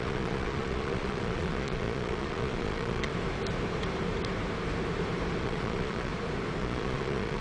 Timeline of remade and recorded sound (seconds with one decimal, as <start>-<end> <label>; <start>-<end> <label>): 0.0-3.1 remade; 3.1-5.4 recorded; 5.4-6.1 remade; 6.1-6.6 recorded; 6.6-7.4 remade

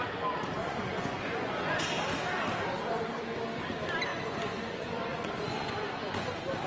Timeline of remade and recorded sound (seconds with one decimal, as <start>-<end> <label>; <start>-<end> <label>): 0.0-0.6 recorded; 0.6-1.8 remade; 1.8-4.1 recorded; 4.1-6.3 remade; 6.3-6.7 recorded

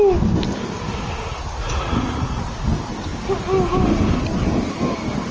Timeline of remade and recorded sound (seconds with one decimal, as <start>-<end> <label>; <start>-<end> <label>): 0.0-1.6 recorded; 1.6-2.5 remade; 2.5-5.3 recorded

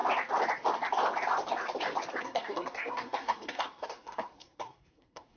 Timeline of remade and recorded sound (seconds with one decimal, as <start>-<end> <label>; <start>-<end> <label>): 0.0-2.2 recorded; 2.2-5.4 remade

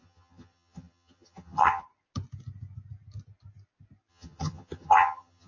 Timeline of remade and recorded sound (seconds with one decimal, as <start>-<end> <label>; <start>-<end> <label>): 0.0-1.8 remade; 1.8-4.1 recorded; 4.1-5.5 remade

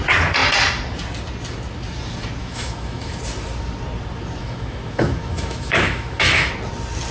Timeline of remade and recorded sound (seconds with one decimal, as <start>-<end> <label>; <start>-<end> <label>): 0.0-2.4 recorded; 2.4-3.2 remade; 3.2-4.4 recorded; 4.4-6.5 remade; 6.5-7.1 recorded

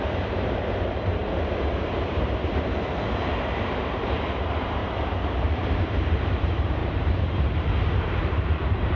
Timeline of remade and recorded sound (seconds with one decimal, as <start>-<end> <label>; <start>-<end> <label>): 0.0-2.7 remade; 2.7-3.6 recorded; 3.6-4.8 remade; 4.8-5.4 recorded; 5.4-9.0 remade